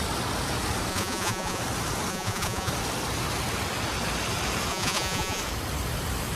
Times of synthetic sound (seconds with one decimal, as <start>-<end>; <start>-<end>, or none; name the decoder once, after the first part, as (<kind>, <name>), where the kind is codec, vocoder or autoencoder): 0.9-1.6 (vocoder, Vocos); 2.1-2.7; 4.7-5.4